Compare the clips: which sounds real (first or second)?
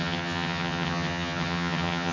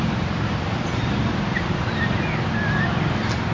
second